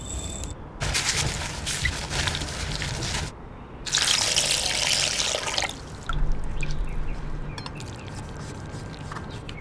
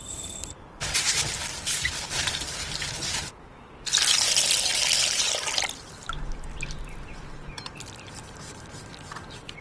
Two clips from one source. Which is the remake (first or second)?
second